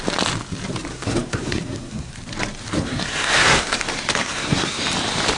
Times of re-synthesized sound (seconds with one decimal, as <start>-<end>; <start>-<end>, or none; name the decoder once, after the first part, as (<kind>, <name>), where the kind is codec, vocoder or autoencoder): 0.9-2.1 (codec, SNAC); 2.8-3.8; 4.2-4.8